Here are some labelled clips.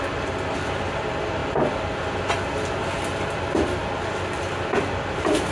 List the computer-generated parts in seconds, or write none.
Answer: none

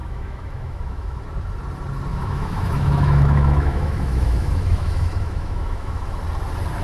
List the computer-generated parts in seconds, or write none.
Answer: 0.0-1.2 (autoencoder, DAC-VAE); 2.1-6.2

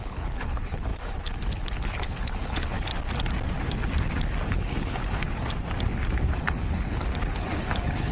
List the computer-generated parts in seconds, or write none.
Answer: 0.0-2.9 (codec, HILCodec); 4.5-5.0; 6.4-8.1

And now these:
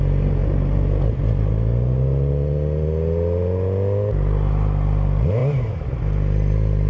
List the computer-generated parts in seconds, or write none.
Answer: none

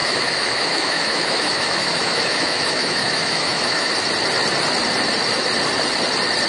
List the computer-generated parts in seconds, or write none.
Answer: 0.0-3.9 (autoencoder, DAC-VAE)

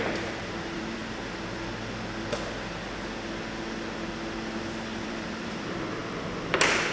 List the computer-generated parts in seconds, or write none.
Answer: 0.0-1.0 (vocoder, BigVGAN v2); 5.0-6.9

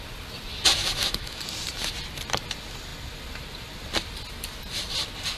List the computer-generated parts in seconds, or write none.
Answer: 0.8-1.4 (autoencoder, DAC-VAE)